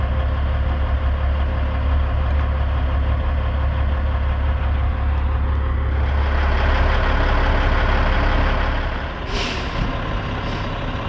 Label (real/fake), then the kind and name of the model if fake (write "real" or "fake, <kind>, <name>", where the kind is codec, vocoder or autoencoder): real